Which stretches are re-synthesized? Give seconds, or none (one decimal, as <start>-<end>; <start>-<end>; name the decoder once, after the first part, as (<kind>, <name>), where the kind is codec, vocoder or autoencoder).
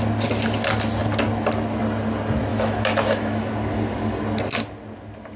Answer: 2.5-3.5 (autoencoder, DAC-VAE)